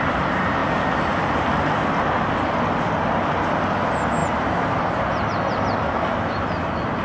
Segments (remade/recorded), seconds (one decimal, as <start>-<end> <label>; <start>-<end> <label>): 0.0-4.2 recorded; 4.2-4.8 remade; 4.8-7.0 recorded